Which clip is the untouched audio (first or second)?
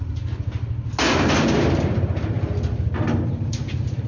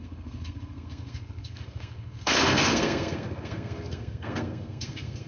first